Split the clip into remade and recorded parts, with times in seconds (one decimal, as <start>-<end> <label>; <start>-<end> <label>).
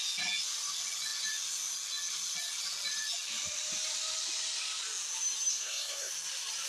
0.0-5.5 recorded; 5.5-6.1 remade; 6.1-6.7 recorded